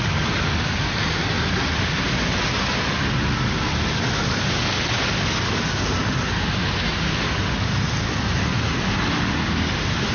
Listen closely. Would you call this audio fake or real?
real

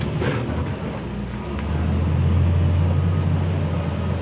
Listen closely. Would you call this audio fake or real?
real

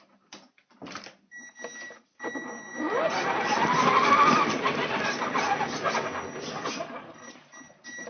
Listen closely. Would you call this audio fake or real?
real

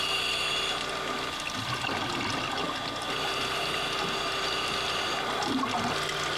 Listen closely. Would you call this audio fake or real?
real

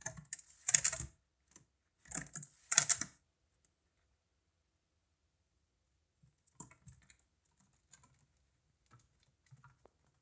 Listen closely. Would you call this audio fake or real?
real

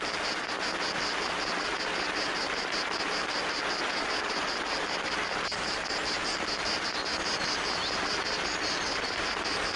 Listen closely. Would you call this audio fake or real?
real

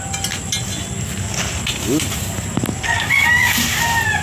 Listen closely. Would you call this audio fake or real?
real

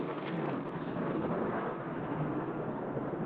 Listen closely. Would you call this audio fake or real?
fake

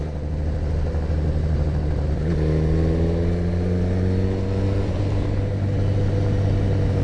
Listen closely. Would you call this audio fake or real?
real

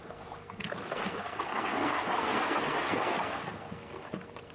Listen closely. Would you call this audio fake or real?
fake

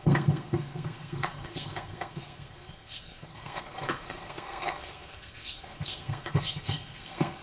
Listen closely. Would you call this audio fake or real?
fake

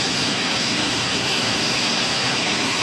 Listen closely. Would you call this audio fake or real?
fake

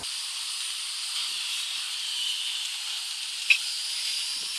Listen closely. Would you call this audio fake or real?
real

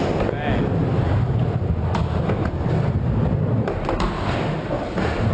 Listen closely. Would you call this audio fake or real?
real